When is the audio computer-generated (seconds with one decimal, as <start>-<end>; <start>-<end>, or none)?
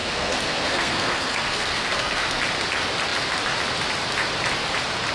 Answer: 0.0-2.4